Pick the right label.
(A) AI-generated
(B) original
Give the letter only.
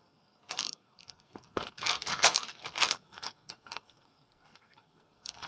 A